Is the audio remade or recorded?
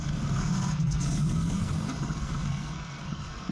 remade